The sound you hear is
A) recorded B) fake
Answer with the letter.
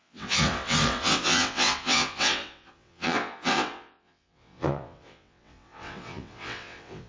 B